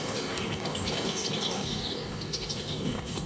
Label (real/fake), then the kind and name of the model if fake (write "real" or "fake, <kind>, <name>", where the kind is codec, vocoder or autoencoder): fake, codec, DAC